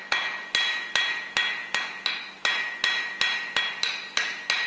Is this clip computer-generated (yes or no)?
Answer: no